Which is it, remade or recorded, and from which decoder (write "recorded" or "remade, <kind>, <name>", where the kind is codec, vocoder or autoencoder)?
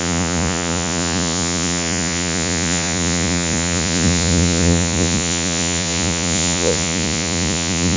remade, vocoder, Vocos